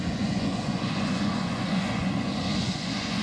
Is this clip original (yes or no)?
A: no